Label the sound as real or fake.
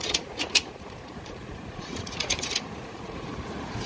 fake